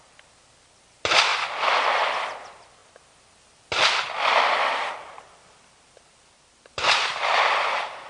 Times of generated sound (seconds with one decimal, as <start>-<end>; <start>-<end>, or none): 0.0-1.3; 1.8-8.1